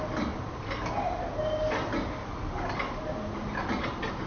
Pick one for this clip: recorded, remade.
recorded